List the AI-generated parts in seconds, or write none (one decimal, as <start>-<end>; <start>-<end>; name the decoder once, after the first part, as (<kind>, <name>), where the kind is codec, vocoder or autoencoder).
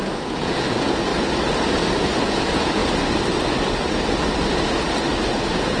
0.0-1.1 (vocoder, Vocos); 2.2-2.8; 5.3-5.8